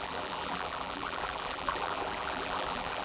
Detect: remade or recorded remade